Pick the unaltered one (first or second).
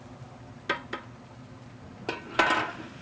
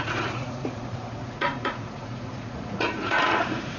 first